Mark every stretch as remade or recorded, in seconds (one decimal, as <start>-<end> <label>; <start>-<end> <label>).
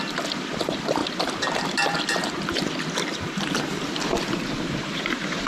0.0-5.5 remade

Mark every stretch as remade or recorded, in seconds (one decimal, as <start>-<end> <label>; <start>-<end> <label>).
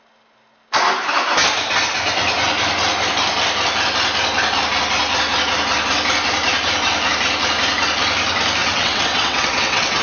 0.0-8.6 recorded; 8.6-10.0 remade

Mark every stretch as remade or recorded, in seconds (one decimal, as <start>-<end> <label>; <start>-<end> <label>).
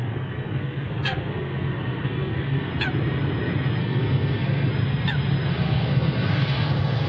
0.0-2.7 remade; 2.7-3.8 recorded; 3.8-4.7 remade; 4.7-5.5 recorded; 5.5-7.1 remade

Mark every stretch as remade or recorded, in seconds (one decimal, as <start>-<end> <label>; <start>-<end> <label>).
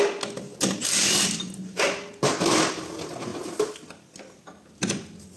0.0-0.5 recorded; 0.5-2.1 remade; 2.1-5.4 recorded